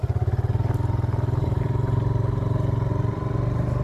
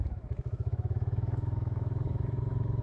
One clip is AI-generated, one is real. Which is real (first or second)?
first